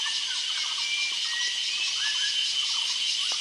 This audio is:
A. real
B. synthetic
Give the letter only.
A